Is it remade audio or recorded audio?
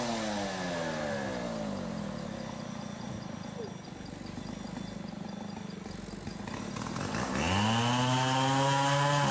recorded